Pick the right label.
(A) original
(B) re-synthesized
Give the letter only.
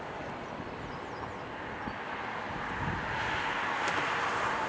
A